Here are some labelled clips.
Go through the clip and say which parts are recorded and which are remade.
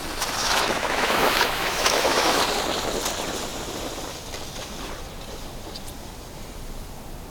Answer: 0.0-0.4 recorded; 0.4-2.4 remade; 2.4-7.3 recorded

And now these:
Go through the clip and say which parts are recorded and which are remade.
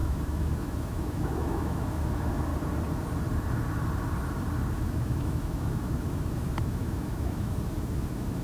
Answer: 0.0-2.5 remade; 2.5-4.7 recorded; 4.7-8.4 remade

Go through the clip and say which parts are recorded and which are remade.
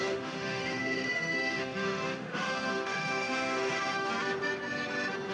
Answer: 0.0-4.1 remade; 4.1-5.3 recorded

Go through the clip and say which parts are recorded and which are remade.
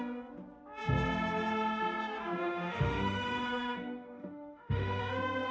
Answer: 0.0-2.4 recorded; 2.4-5.0 remade; 5.0-5.5 recorded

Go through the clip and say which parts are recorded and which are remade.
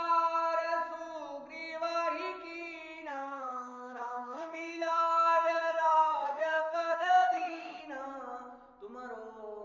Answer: 0.0-3.1 recorded; 3.1-7.8 remade; 7.8-9.6 recorded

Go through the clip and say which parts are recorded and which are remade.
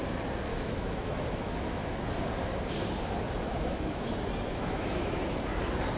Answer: 0.0-0.5 recorded; 0.5-2.0 remade; 2.0-3.5 recorded; 3.5-4.1 remade; 4.1-4.5 recorded; 4.5-5.2 remade; 5.2-6.0 recorded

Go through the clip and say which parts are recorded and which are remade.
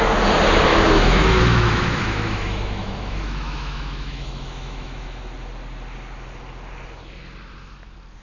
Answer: 0.0-0.7 recorded; 0.7-5.2 remade; 5.2-8.2 recorded